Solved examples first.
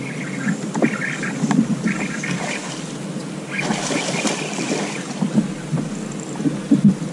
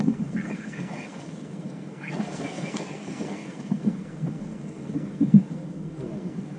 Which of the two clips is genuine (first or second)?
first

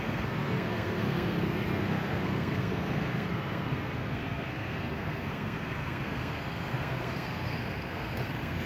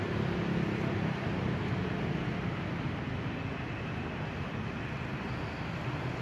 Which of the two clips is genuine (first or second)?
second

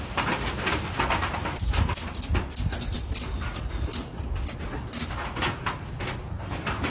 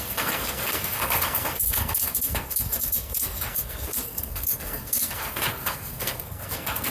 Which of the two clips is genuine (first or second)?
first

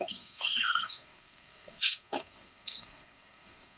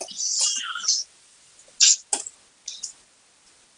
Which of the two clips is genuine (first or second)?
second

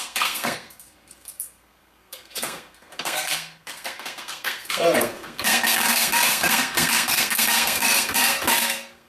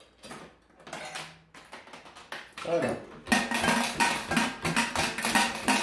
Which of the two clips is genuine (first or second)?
second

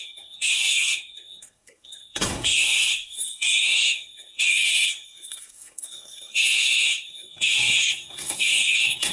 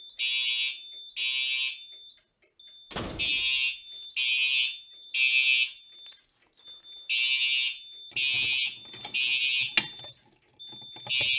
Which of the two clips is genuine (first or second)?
second